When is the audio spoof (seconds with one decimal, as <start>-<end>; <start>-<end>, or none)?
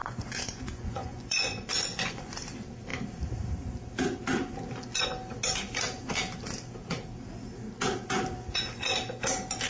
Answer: 0.0-2.3